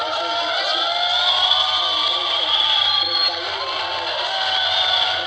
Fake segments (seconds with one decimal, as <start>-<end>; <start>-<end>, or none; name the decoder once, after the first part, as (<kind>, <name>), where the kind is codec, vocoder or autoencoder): 2.2-3.6 (vocoder, BigVGAN v2)